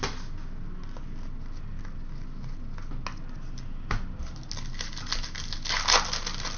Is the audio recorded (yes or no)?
yes